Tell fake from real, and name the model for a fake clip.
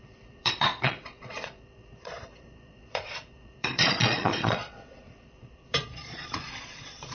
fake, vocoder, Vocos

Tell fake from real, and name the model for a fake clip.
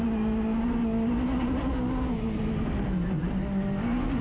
real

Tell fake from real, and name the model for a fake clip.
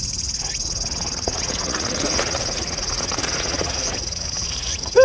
fake, vocoder, Vocos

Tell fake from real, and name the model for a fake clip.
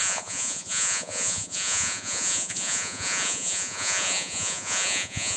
fake, vocoder, Vocos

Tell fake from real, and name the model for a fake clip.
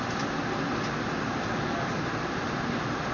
real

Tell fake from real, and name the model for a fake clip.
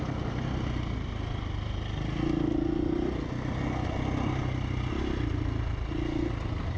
real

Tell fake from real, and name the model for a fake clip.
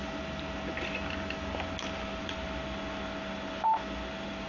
real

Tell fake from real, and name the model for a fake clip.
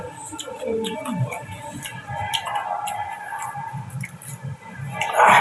real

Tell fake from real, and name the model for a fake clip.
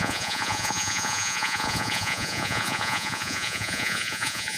fake, vocoder, Vocos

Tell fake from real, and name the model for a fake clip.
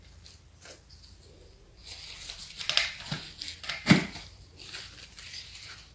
real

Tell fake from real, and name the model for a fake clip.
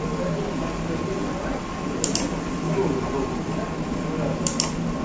real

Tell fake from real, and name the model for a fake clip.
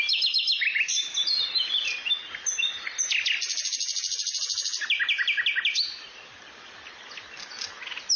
real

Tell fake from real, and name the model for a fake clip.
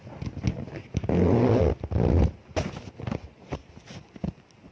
real